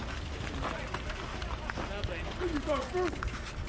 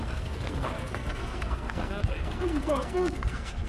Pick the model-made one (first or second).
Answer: second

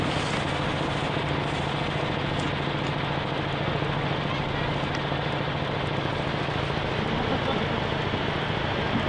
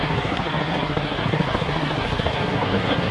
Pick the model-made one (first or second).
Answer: second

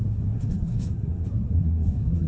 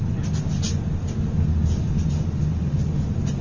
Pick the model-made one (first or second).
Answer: first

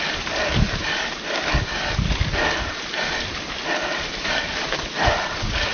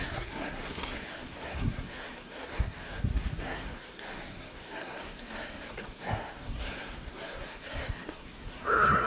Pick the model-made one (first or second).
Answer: second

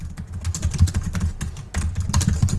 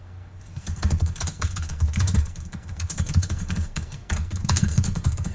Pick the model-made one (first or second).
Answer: second